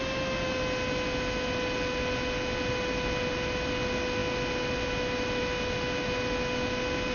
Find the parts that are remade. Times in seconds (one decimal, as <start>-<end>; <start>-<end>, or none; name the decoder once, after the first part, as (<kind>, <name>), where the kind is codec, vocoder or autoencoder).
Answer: none